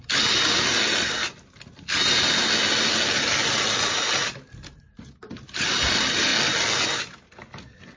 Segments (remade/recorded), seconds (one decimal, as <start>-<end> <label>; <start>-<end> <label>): 0.0-8.0 recorded